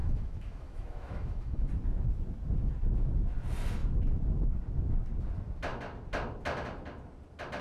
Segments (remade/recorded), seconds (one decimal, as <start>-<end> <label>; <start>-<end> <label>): 0.0-1.7 remade; 1.7-7.6 recorded